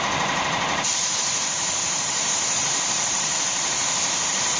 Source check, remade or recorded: remade